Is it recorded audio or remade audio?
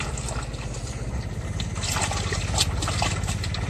recorded